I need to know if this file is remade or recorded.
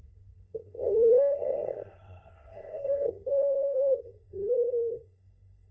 remade